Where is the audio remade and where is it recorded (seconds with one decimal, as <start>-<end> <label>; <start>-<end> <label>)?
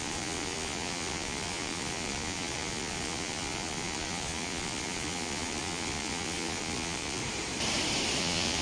0.0-7.2 remade; 7.2-8.2 recorded; 8.2-8.6 remade